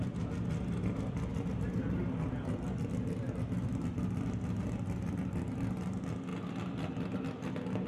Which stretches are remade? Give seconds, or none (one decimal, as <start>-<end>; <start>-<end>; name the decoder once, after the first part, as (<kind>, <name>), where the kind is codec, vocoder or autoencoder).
none

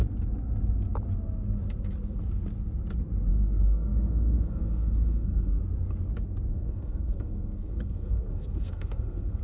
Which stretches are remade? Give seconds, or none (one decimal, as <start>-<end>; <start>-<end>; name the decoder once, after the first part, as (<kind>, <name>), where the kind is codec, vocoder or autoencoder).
3.3-5.6 (codec, SNAC); 6.5-9.4

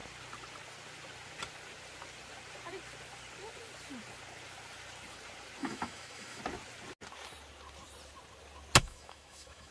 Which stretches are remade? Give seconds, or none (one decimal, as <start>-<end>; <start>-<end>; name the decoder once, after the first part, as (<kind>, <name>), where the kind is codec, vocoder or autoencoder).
5.6-6.4 (autoencoder, DAC-VAE); 8.8-9.7

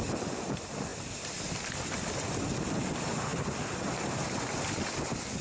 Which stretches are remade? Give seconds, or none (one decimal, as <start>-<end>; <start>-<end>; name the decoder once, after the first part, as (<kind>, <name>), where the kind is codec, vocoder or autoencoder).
none

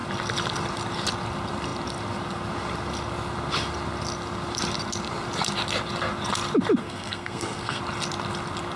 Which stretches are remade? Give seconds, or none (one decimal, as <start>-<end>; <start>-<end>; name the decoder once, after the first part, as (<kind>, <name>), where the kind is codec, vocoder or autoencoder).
6.8-7.8 (codec, SNAC)

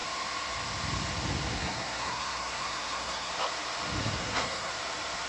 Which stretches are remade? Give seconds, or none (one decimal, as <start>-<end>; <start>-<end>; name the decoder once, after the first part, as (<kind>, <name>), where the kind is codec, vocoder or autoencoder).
1.6-3.3 (codec, SNAC); 4.0-4.7